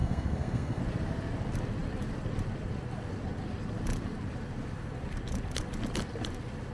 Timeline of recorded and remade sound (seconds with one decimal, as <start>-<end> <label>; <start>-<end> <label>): 0.0-0.8 remade; 0.8-6.7 recorded